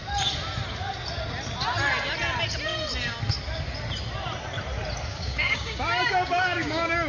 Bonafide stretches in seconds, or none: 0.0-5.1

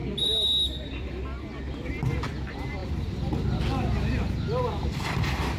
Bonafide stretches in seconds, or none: 1.1-5.6

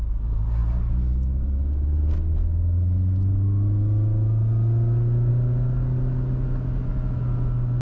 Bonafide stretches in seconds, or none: 0.0-7.8

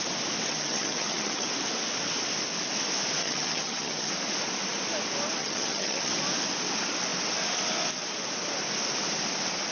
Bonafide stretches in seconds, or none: 0.0-0.5; 1.5-3.2; 4.1-5.4; 6.1-9.7

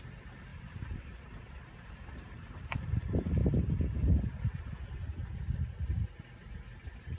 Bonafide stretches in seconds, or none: 0.0-0.5; 2.9-7.2

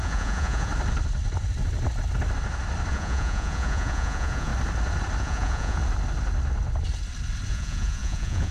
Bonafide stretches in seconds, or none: 0.7-2.9; 4.5-5.2; 5.8-7.5

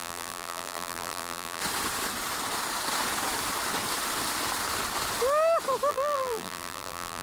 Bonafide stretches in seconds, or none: 1.6-5.9

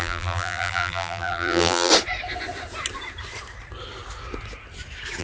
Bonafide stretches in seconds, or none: 1.9-5.2